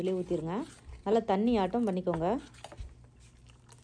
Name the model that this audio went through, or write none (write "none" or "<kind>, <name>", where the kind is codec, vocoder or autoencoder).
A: none